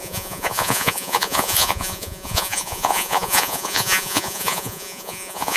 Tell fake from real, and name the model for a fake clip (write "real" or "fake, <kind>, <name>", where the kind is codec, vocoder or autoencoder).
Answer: fake, vocoder, Vocos